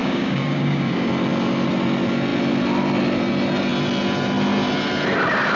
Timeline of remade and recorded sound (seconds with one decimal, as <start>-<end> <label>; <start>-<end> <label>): 0.0-1.1 remade; 1.1-5.6 recorded

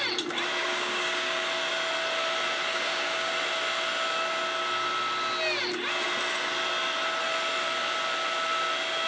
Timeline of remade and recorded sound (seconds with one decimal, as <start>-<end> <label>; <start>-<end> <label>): 0.0-0.6 recorded; 0.6-1.5 remade; 1.5-2.7 recorded; 2.7-3.3 remade; 3.3-9.1 recorded